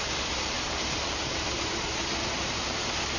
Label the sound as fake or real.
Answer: fake